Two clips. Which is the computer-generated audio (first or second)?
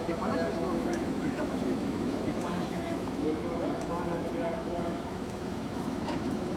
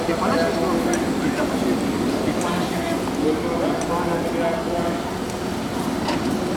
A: first